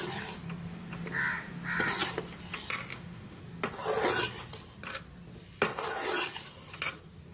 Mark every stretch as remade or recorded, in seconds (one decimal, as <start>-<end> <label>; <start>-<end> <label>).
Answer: 0.0-2.9 recorded; 2.9-3.4 remade; 3.4-7.3 recorded